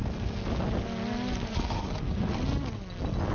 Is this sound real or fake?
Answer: real